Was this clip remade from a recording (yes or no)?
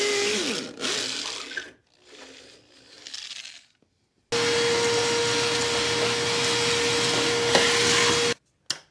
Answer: no